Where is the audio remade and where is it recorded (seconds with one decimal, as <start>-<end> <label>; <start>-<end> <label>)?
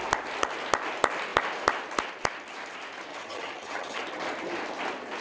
0.0-3.1 recorded; 3.1-4.0 remade; 4.0-5.2 recorded